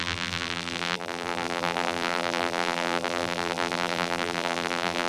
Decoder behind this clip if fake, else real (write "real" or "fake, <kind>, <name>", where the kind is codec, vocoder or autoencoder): fake, vocoder, BigVGAN v2